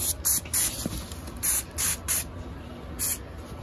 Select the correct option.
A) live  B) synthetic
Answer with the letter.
A